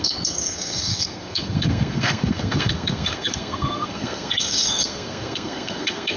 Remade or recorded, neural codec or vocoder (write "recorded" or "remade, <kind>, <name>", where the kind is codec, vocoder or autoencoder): remade, codec, SNAC